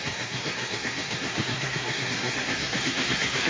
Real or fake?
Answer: fake